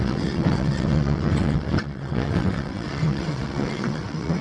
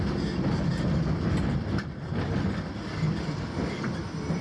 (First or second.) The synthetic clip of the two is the first